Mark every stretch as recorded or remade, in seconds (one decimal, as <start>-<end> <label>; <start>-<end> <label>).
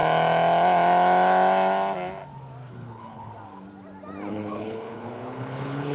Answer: 0.0-2.7 recorded; 2.7-3.3 remade; 3.3-4.3 recorded; 4.3-5.9 remade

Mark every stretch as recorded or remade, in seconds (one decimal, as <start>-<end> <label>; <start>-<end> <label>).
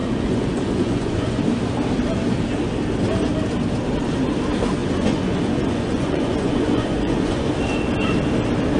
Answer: 0.0-1.4 remade; 1.4-4.8 recorded; 4.8-7.5 remade; 7.5-8.8 recorded